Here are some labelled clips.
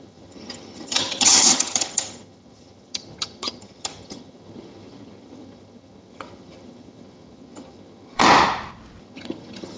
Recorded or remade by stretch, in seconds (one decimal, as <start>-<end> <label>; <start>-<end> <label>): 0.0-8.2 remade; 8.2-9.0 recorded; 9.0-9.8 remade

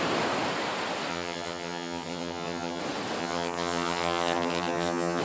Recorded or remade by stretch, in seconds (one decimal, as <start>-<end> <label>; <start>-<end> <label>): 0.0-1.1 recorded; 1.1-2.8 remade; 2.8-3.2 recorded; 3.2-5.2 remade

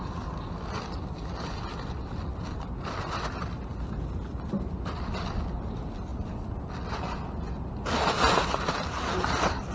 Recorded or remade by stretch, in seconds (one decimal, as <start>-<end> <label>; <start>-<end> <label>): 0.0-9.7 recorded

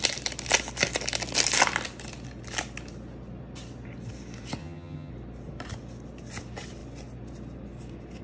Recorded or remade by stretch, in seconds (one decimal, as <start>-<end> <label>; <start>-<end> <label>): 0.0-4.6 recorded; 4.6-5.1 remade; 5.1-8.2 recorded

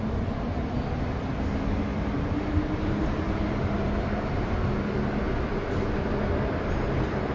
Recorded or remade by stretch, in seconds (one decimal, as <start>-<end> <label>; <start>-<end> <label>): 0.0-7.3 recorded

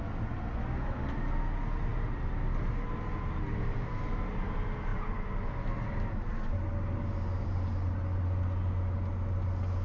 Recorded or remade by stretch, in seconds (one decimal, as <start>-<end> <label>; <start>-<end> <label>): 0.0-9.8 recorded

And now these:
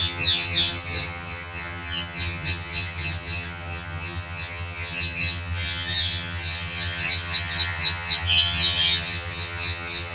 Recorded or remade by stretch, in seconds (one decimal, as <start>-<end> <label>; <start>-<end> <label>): 0.0-10.1 remade

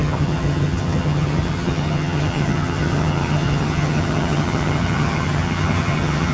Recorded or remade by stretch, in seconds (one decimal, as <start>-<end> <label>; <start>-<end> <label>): 0.0-6.3 remade